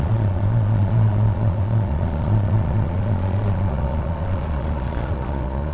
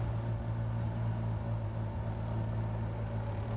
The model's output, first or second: first